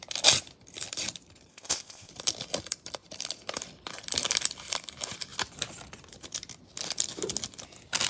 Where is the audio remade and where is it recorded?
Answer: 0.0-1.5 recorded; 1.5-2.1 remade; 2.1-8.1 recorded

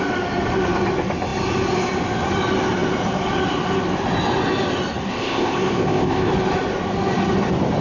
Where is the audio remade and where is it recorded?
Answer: 0.0-5.1 recorded; 5.1-6.3 remade; 6.3-7.8 recorded

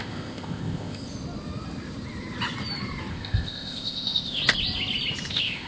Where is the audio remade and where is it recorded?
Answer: 0.0-1.1 remade; 1.1-3.1 recorded; 3.1-4.4 remade; 4.4-5.3 recorded; 5.3-5.7 remade

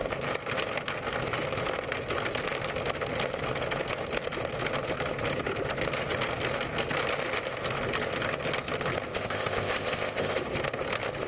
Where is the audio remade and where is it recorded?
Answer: 0.0-9.1 recorded; 9.1-10.4 remade; 10.4-11.3 recorded

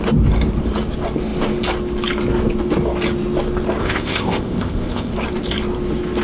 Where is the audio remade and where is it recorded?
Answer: 0.0-3.8 recorded; 3.8-5.1 remade; 5.1-6.2 recorded

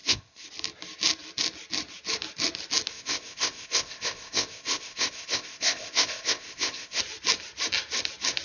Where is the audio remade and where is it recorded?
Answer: 0.0-0.5 remade; 0.5-2.9 recorded; 2.9-7.0 remade; 7.0-8.4 recorded